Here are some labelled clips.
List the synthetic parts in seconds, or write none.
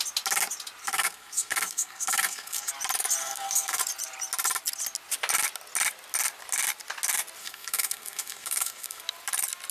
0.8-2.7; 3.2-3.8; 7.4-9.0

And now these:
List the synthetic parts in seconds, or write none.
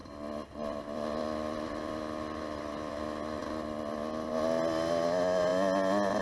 0.0-2.9; 3.4-4.3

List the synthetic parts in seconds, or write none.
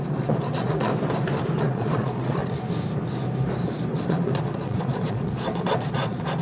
0.0-0.9; 1.6-2.4; 3.9-6.4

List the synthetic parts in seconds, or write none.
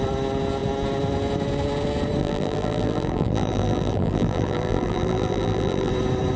2.2-5.9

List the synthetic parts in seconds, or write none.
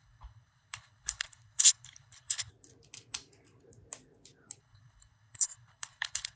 0.0-2.5; 4.6-6.4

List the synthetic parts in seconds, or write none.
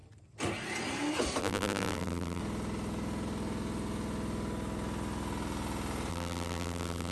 1.4-2.4; 6.1-7.1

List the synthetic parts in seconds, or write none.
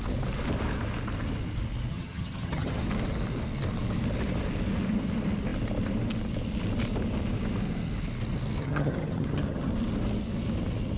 1.9-2.8; 8.6-9.7